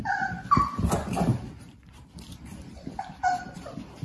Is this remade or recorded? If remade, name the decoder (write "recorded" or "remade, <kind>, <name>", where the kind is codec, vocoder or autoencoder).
remade, vocoder, BigVGAN v2